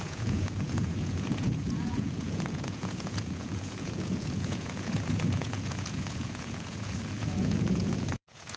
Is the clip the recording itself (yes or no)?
no